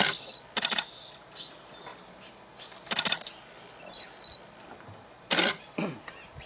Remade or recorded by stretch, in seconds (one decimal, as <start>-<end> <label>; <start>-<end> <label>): 0.0-6.5 recorded